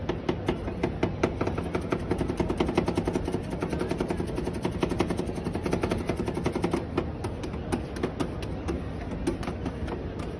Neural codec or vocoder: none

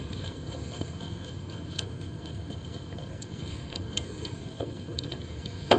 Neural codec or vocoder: codec, SNAC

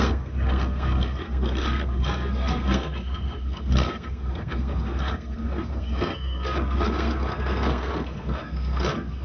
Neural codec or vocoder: codec, SNAC